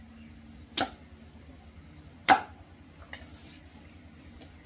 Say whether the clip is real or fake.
real